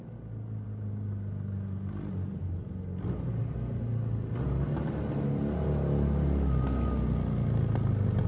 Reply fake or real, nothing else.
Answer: real